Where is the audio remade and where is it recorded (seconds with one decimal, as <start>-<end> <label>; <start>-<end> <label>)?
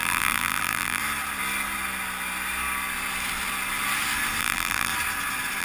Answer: 0.0-1.0 remade; 1.0-4.4 recorded; 4.4-4.9 remade; 4.9-5.6 recorded